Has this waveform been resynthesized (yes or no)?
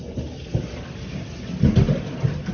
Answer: no